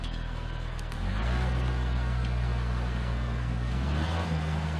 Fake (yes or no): yes